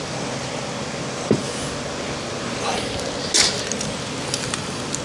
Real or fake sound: real